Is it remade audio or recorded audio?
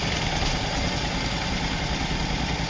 recorded